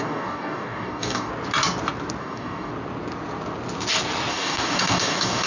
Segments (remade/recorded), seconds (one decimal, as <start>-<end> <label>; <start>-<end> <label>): 0.0-1.3 remade; 1.3-2.2 recorded; 2.2-2.7 remade; 2.7-4.3 recorded; 4.3-5.5 remade